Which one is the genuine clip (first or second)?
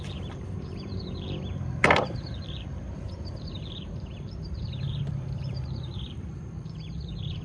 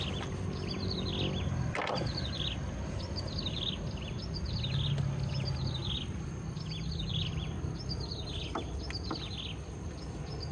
second